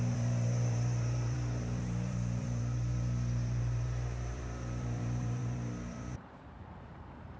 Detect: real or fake fake